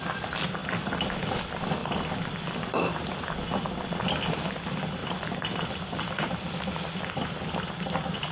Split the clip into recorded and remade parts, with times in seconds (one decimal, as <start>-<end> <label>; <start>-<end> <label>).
0.0-8.3 recorded